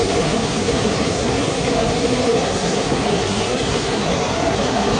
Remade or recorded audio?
remade